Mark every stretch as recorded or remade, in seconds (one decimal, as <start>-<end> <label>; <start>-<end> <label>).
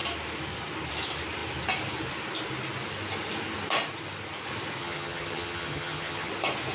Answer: 0.0-4.8 recorded; 4.8-6.3 remade; 6.3-6.7 recorded